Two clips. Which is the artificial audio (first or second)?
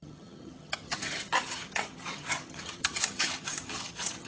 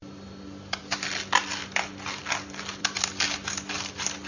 first